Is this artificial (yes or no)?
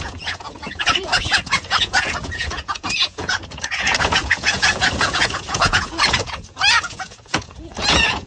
yes